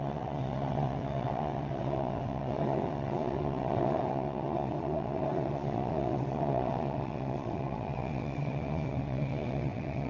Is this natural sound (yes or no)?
no